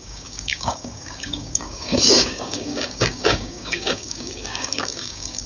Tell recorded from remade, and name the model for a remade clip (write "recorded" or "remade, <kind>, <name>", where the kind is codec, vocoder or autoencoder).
remade, codec, DAC